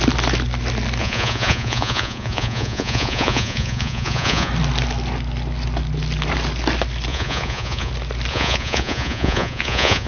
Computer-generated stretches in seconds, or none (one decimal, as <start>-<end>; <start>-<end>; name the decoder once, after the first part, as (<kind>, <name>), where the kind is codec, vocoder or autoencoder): 1.0-4.5 (vocoder, Vocos); 7.1-7.9; 8.3-10.1